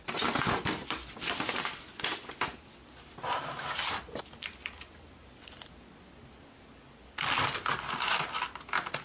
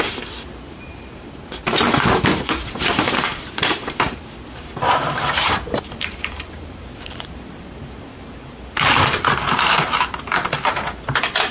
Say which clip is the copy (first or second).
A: second